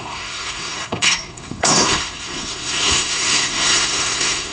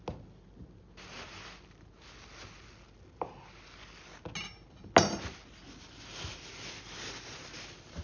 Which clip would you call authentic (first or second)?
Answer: second